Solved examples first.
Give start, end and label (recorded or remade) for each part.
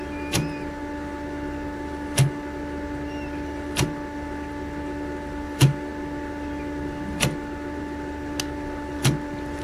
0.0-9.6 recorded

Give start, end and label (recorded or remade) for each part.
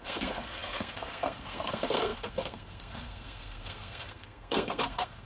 0.0-5.3 remade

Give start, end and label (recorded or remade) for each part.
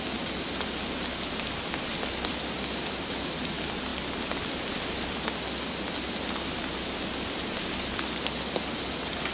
0.0-9.3 recorded